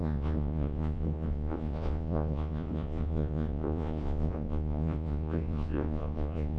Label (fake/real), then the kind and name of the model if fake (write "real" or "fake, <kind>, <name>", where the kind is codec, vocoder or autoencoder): fake, vocoder, Vocos